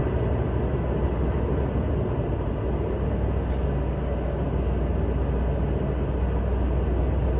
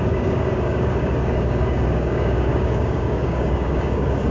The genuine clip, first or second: first